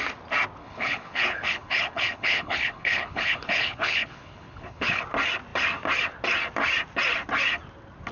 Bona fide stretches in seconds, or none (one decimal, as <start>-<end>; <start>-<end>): 0.0-0.6; 5.0-8.1